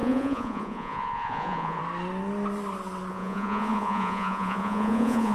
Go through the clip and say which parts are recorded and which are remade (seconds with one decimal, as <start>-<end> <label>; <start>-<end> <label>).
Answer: 0.0-1.8 remade; 1.8-3.1 recorded; 3.1-5.3 remade